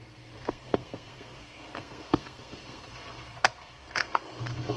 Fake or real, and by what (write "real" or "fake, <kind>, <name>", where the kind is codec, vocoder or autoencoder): fake, codec, SNAC